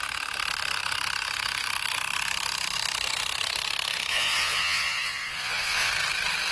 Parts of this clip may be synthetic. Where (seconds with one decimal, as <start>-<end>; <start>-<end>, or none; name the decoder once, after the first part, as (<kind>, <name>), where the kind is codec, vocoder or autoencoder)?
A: 4.1-5.9 (vocoder, Vocos)

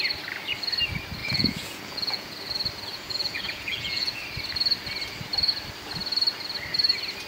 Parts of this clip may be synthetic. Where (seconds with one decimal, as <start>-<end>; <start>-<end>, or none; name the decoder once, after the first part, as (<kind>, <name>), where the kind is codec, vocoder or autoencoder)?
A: 1.2-2.3 (vocoder, Vocos); 2.9-4.1

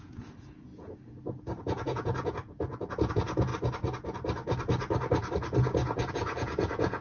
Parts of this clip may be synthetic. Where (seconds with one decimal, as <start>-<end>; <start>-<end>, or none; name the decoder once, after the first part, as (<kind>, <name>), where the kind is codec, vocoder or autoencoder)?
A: 0.0-3.5 (vocoder, Vocos); 6.1-7.0

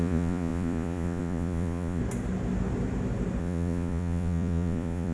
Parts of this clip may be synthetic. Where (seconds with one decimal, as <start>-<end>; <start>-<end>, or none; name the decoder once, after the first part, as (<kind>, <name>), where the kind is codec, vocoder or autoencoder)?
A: 0.0-2.0 (vocoder, Vocos); 3.4-5.1